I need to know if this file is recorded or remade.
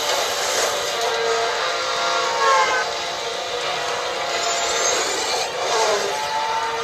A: recorded